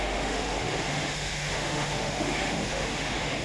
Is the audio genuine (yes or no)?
no